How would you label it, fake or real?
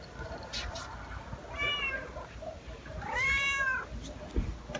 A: real